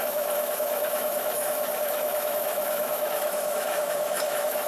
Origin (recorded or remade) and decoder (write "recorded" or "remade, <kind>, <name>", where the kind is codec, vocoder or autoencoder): remade, autoencoder, DAC-VAE